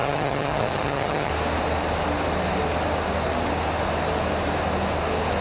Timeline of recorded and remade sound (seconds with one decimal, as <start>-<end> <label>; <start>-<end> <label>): 0.0-1.3 remade; 1.3-5.4 recorded